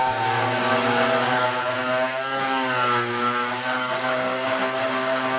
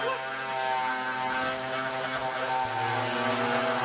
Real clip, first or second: second